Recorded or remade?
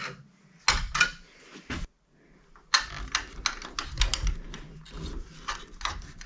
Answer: recorded